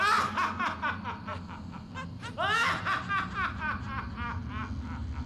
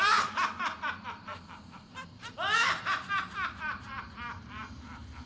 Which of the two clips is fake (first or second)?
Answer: second